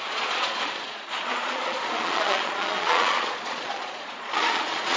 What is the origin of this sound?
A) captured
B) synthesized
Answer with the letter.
B